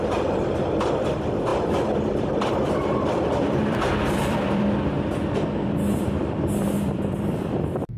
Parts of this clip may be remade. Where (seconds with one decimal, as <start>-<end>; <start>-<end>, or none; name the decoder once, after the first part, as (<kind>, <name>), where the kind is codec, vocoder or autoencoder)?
0.0-8.0 (vocoder, BigVGAN v2)